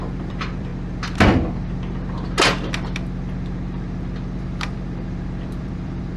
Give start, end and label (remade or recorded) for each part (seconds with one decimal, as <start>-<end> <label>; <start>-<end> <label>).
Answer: 0.0-0.7 remade; 0.7-4.4 recorded; 4.4-6.2 remade